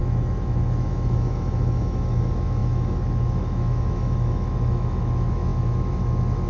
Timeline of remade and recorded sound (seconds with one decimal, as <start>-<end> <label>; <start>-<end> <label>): 0.0-6.5 remade

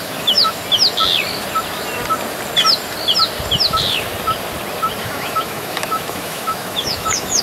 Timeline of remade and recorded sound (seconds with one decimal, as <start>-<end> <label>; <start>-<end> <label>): 0.0-0.6 remade; 0.6-5.0 recorded; 5.0-7.4 remade

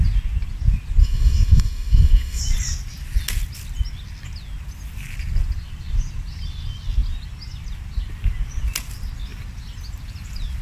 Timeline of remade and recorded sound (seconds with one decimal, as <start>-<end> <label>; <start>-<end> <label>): 0.0-1.0 recorded; 1.0-2.4 remade; 2.4-10.6 recorded

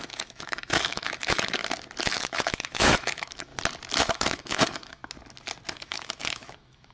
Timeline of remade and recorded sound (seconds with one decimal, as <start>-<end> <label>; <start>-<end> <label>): 0.0-1.6 remade; 1.6-2.1 recorded; 2.1-3.5 remade; 3.5-4.0 recorded; 4.0-5.0 remade; 5.0-5.7 recorded; 5.7-6.9 remade